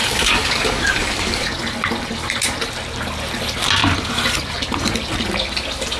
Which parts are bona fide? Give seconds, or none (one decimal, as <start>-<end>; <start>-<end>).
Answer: 1.6-6.0